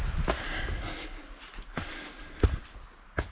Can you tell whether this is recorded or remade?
recorded